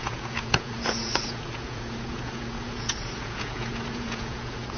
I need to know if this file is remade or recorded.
remade